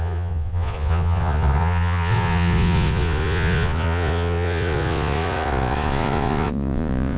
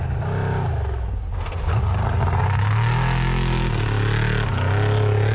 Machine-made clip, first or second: first